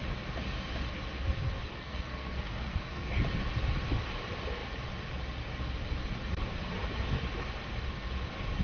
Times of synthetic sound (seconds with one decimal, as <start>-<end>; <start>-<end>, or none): 1.7-3.1